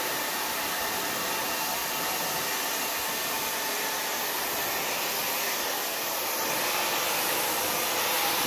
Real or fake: real